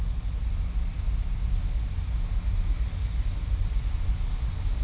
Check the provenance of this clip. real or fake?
real